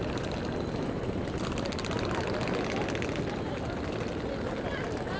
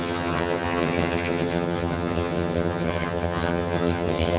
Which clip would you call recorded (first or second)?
first